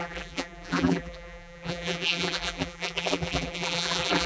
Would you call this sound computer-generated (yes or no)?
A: yes